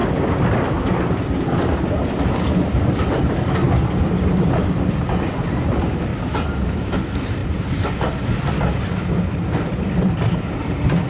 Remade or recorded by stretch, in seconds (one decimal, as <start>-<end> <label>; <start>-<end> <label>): 0.0-4.9 recorded; 4.9-6.1 remade; 6.1-6.7 recorded; 6.7-7.4 remade; 7.4-8.1 recorded; 8.1-11.1 remade